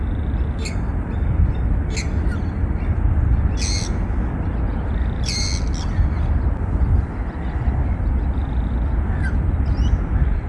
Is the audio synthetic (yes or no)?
no